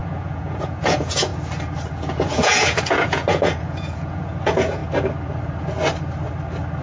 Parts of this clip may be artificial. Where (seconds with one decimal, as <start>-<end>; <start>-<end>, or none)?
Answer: 0.0-1.3; 1.9-4.8